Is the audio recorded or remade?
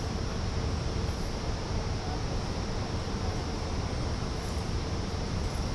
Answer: remade